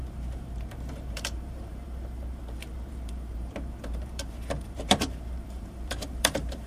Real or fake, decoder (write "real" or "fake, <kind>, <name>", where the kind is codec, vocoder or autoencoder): fake, vocoder, BigVGAN v2